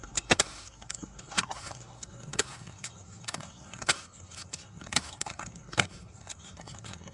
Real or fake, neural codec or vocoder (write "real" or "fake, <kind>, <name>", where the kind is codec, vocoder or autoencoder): fake, codec, SNAC